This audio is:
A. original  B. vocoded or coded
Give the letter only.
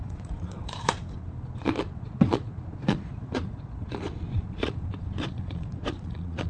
B